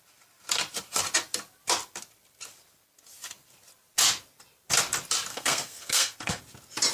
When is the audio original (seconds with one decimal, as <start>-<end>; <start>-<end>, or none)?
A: 0.0-5.3; 6.4-6.9